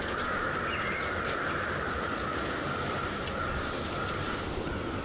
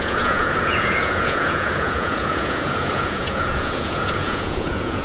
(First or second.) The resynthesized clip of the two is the second